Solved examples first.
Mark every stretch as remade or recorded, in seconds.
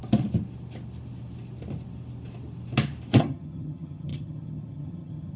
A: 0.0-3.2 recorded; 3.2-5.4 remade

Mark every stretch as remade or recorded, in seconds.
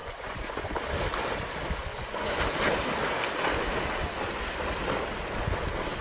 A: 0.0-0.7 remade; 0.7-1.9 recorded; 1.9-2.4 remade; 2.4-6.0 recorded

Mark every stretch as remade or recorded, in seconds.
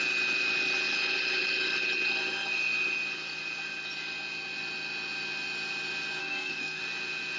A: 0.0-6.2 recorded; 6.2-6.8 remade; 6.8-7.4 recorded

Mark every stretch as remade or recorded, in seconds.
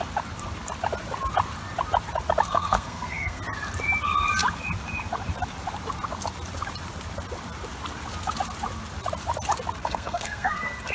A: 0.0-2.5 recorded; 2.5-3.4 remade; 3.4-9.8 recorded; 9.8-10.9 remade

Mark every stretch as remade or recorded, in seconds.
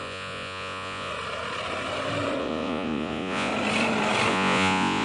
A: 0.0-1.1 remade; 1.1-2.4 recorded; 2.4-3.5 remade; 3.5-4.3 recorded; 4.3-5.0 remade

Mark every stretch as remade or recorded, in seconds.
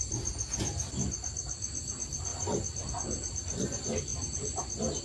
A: 0.0-5.0 recorded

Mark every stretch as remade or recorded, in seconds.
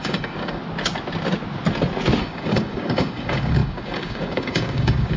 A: 0.0-0.6 remade; 0.6-2.2 recorded; 2.2-5.2 remade